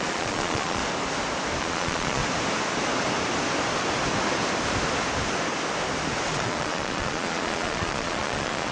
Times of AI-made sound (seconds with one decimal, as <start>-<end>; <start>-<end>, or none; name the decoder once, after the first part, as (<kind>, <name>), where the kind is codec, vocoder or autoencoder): 0.0-0.8 (vocoder, Vocos); 1.6-2.2; 6.3-8.7